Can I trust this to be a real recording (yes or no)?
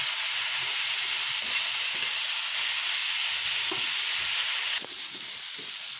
yes